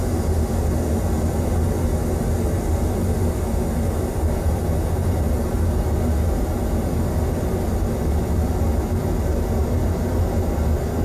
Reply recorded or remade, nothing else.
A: recorded